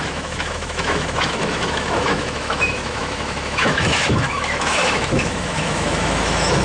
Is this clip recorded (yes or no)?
no